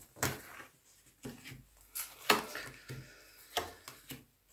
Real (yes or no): yes